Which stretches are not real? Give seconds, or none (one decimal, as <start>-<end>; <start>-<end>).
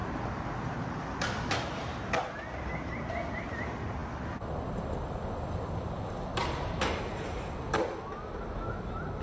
none